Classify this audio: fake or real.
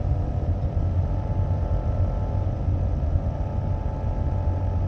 real